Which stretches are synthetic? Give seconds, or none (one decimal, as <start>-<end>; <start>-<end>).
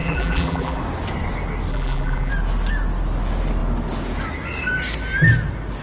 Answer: 0.0-0.8; 1.7-2.3